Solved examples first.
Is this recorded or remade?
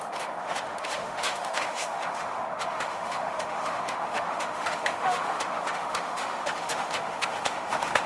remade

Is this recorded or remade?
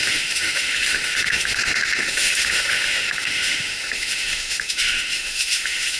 remade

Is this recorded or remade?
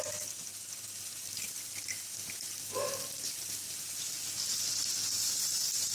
recorded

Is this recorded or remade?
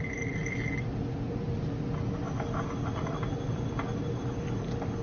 recorded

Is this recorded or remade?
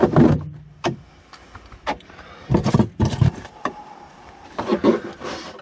recorded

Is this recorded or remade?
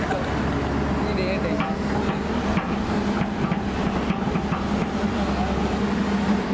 recorded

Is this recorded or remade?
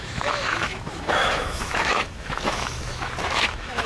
remade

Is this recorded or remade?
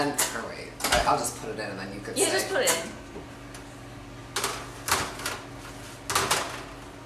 recorded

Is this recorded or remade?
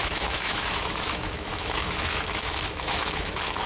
remade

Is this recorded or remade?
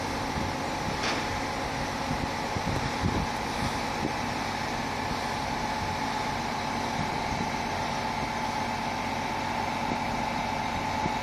recorded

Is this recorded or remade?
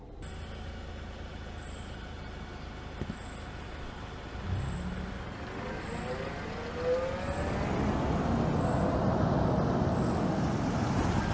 recorded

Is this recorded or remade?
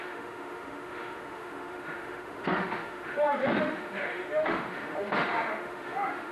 remade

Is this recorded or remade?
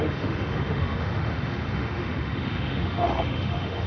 remade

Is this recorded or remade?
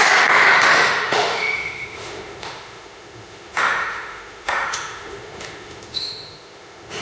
remade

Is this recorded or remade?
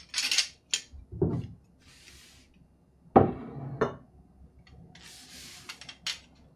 recorded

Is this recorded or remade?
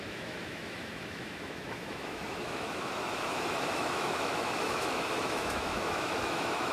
remade